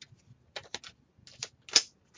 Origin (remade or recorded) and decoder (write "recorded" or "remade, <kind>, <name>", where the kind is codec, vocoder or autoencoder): recorded